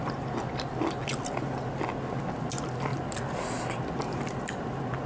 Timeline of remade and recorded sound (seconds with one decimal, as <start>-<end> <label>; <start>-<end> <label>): 0.0-5.1 recorded